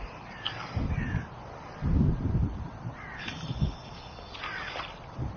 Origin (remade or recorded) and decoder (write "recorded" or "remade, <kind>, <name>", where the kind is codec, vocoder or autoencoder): recorded